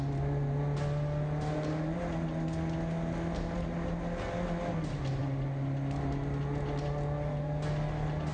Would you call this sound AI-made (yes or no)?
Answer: no